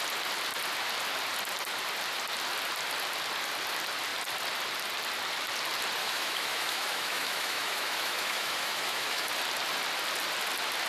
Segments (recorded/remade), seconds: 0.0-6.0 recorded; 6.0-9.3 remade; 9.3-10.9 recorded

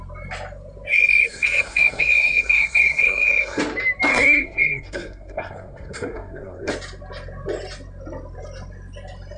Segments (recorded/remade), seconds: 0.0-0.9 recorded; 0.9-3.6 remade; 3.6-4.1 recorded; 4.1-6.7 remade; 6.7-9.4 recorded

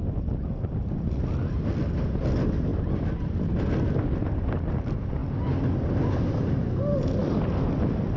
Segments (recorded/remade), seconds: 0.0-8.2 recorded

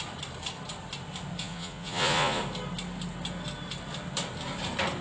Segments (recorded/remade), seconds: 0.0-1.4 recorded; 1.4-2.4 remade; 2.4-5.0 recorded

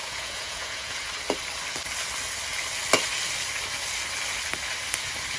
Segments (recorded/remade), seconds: 0.0-1.1 remade; 1.1-5.4 recorded

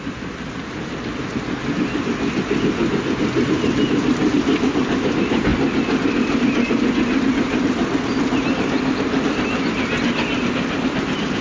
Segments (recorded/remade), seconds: 0.0-11.4 recorded

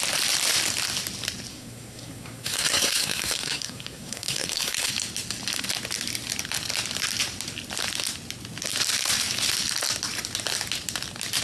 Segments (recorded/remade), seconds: 0.0-1.5 recorded; 1.5-4.9 remade; 4.9-11.4 recorded